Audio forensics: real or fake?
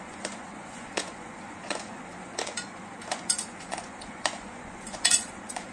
fake